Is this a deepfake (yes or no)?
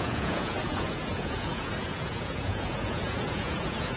yes